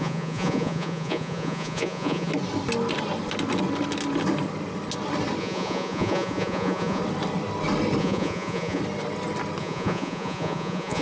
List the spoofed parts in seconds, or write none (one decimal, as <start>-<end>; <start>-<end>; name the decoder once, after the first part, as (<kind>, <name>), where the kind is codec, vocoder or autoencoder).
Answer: 0.0-2.3 (vocoder, Vocos); 5.4-7.0; 8.0-8.8; 9.6-11.0

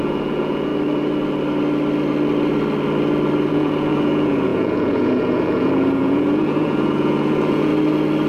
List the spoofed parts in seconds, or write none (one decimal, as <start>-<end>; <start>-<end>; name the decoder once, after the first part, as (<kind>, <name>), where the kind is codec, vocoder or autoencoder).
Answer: 0.0-0.7 (vocoder, Vocos); 3.5-7.7

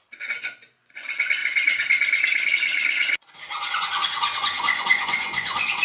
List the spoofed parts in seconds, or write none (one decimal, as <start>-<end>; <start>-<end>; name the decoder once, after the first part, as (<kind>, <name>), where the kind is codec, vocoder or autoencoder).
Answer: 0.0-1.4 (vocoder, Vocos); 2.5-5.8

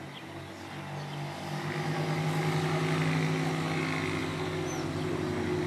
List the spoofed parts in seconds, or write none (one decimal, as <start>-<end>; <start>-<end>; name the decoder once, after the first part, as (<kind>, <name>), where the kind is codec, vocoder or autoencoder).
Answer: none

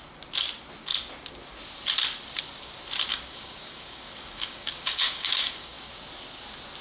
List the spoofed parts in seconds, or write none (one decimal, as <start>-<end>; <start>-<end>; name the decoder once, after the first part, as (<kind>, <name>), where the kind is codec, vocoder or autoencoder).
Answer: 3.1-5.9 (codec, DAC)